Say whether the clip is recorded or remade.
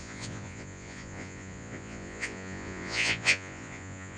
remade